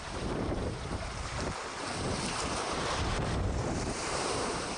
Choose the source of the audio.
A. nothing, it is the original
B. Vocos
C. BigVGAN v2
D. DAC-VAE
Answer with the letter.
C